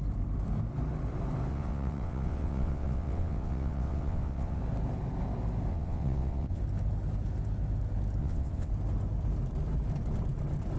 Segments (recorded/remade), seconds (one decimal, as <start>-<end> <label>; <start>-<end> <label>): 0.0-1.5 recorded; 1.5-4.6 remade; 4.6-5.7 recorded; 5.7-6.6 remade; 6.6-8.2 recorded; 8.2-8.7 remade; 8.7-10.8 recorded